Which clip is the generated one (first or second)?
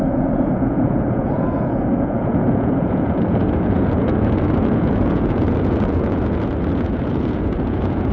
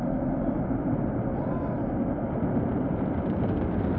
first